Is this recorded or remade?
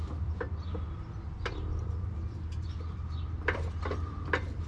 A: remade